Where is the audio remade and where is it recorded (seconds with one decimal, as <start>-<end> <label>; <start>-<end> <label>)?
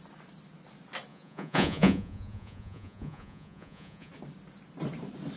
0.0-1.1 recorded; 1.1-4.1 remade; 4.1-5.4 recorded